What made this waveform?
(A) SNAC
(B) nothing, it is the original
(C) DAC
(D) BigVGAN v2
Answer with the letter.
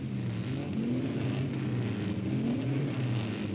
B